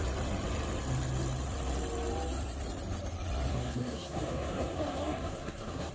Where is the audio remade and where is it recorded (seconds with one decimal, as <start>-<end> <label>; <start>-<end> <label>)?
0.0-3.5 recorded; 3.5-5.9 remade